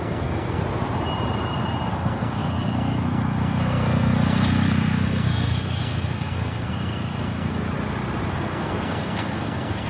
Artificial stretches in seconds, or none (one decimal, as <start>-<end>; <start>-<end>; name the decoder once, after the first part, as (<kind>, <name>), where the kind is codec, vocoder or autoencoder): 0.0-0.6 (codec, SNAC); 1.9-7.6; 8.3-9.9